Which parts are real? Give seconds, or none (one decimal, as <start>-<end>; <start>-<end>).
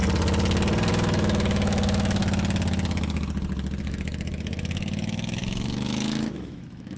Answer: 0.0-0.9; 2.2-3.8